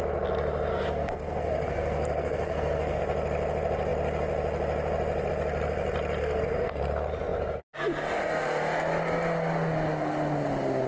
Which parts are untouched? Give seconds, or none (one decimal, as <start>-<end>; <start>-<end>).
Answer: 0.0-0.7; 3.0-6.2; 6.8-10.9